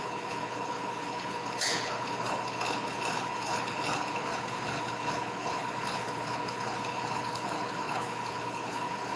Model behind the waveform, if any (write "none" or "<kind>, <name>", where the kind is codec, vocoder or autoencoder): codec, HILCodec